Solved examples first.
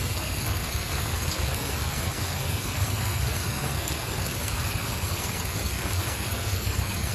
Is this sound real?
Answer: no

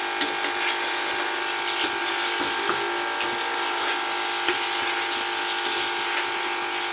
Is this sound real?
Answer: yes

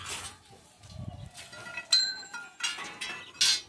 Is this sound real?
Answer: yes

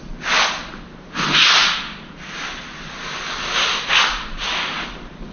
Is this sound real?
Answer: yes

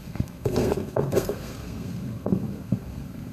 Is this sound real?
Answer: no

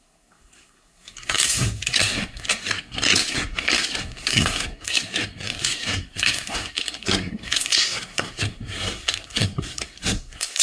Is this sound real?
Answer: no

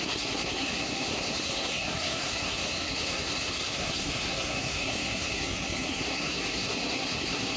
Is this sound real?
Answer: no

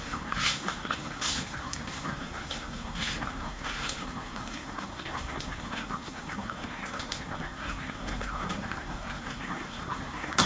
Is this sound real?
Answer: no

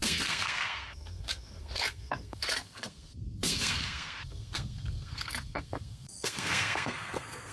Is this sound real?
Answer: no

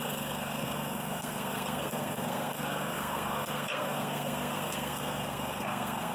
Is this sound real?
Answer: no